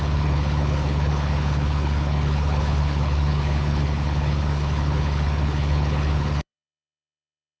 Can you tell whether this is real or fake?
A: fake